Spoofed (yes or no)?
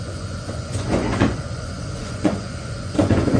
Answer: yes